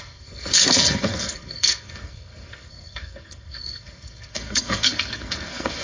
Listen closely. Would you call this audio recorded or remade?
remade